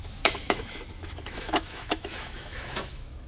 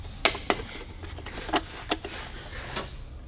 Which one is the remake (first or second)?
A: first